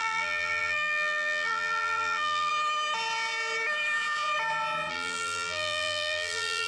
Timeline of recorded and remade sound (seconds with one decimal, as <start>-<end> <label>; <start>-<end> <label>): 0.0-2.5 remade; 2.5-4.9 recorded; 4.9-6.7 remade